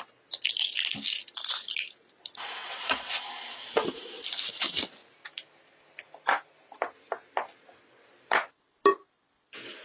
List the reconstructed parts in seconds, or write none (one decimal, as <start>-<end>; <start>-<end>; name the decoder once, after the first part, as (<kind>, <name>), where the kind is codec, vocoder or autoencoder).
2.6-3.2 (vocoder, WaveNeXt)